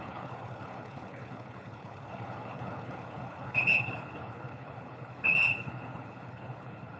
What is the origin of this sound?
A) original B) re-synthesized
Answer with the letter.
B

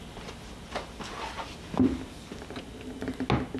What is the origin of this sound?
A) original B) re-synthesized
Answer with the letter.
A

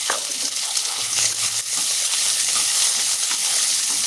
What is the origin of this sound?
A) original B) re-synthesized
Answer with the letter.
B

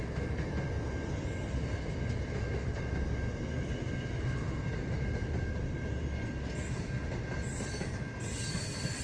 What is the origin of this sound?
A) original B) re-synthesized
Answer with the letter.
A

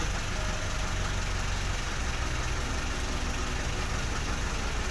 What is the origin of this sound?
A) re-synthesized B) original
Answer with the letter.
B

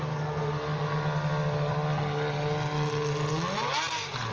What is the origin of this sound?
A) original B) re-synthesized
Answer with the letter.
A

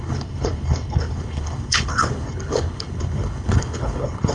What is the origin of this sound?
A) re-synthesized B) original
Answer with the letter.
A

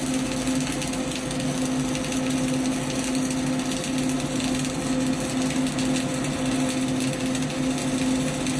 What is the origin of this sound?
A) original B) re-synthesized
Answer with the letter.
A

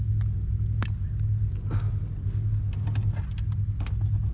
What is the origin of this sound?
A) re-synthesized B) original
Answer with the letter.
B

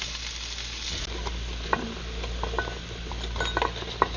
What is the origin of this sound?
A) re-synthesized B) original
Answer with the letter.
B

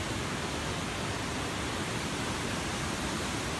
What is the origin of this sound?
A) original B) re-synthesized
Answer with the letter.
A